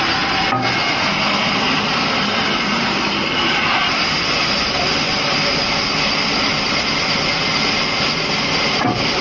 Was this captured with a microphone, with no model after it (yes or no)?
yes